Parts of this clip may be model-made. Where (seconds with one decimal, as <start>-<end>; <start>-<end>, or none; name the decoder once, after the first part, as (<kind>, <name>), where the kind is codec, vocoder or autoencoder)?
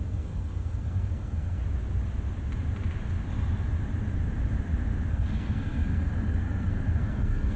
0.0-1.6 (codec, SNAC); 5.1-7.6